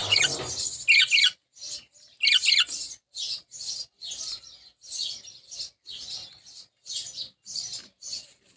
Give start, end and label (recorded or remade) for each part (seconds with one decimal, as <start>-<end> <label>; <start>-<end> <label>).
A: 0.0-8.6 recorded